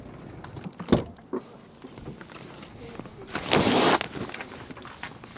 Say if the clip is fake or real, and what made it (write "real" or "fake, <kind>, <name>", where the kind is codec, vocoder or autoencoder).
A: real